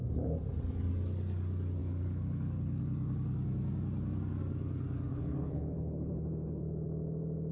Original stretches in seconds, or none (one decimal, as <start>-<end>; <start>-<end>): 0.0-1.8; 2.8-5.1; 6.6-7.5